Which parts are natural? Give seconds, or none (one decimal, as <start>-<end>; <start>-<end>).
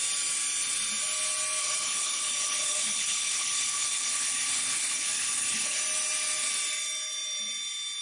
0.0-1.6; 5.8-8.0